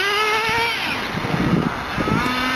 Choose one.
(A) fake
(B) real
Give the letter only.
B